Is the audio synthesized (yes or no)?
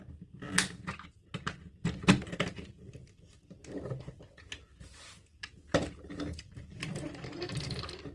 no